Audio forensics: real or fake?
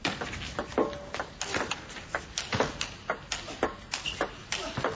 real